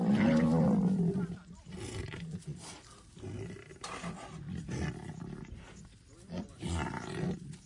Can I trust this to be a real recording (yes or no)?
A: yes